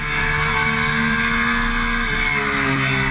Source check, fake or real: real